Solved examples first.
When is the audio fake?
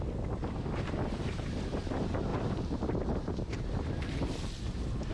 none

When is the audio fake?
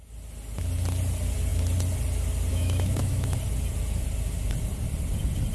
2.5-3.4 (autoencoder, DAC-VAE)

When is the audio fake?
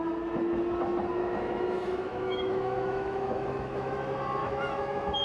1.2-4.0 (autoencoder, DAC-VAE); 4.4-5.2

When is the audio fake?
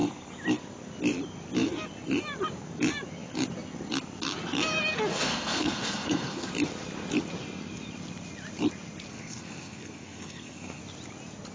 5.1-6.5 (codec, SNAC); 9.1-10.8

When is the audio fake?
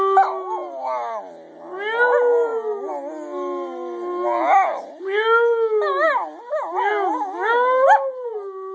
none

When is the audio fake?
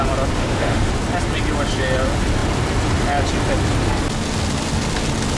0.4-0.9 (autoencoder, DAC-VAE)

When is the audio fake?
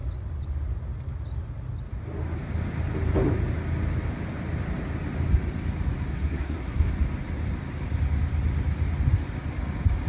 6.1-6.9 (codec, SNAC)